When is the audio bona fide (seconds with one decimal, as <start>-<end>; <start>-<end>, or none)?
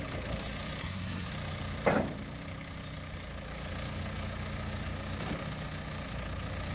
0.0-0.8; 1.3-6.7